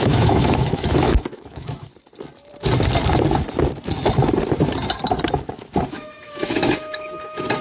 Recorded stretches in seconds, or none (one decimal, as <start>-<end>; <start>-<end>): 1.9-5.5